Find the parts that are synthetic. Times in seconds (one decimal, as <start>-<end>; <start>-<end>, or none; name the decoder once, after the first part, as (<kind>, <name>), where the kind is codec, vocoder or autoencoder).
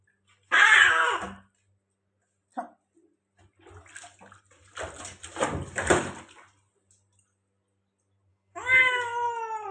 8.3-8.9 (autoencoder, DAC-VAE)